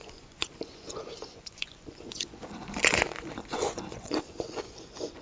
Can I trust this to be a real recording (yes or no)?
no